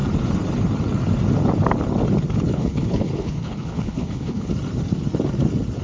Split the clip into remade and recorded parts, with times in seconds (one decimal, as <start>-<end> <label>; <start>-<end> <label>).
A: 0.0-2.5 recorded; 2.5-4.5 remade; 4.5-5.8 recorded